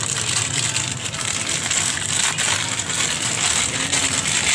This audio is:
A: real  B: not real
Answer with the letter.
A